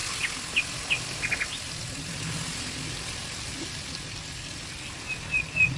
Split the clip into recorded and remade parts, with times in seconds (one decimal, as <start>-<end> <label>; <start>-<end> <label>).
0.0-5.8 recorded